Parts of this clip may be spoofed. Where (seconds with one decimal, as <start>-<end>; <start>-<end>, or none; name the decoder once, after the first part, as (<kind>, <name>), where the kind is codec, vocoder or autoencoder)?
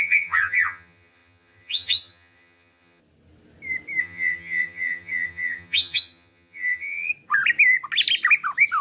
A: 0.0-3.0 (vocoder, HiFi-GAN); 4.0-7.1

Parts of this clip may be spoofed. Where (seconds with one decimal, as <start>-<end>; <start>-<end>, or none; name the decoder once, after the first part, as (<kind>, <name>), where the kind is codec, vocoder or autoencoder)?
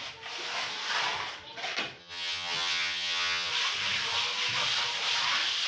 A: 2.0-3.5 (vocoder, HiFi-GAN)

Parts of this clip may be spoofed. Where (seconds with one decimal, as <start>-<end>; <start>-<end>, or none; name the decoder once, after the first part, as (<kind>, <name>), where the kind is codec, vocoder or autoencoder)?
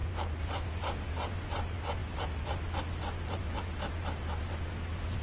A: none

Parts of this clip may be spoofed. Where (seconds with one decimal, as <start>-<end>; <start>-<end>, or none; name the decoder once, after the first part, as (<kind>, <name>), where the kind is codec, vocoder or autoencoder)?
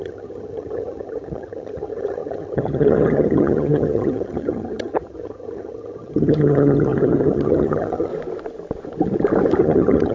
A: 0.0-8.1 (vocoder, HiFi-GAN); 9.6-10.1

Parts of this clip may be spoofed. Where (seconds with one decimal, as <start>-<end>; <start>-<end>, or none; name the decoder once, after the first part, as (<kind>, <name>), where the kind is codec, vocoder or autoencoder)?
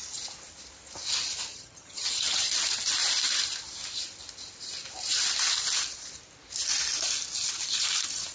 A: 1.5-2.5 (vocoder, HiFi-GAN)